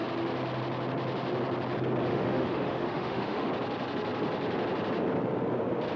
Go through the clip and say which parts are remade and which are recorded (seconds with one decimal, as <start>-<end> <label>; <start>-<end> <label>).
0.0-2.1 recorded; 2.1-3.5 remade; 3.5-6.0 recorded